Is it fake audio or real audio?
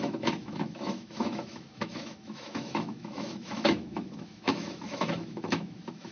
fake